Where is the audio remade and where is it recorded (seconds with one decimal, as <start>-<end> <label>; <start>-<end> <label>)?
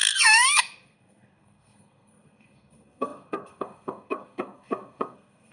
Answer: 0.0-5.5 remade